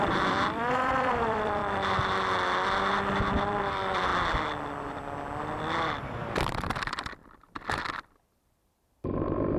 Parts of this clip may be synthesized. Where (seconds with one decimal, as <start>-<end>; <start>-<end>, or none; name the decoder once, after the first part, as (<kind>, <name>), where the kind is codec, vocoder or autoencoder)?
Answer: 0.0-1.6 (vocoder, BigVGAN v2); 3.6-4.1; 6.0-9.6